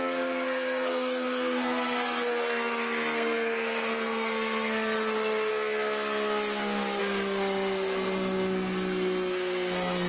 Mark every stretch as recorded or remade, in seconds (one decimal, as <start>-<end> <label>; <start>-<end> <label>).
0.0-5.5 remade; 5.5-7.0 recorded; 7.0-10.1 remade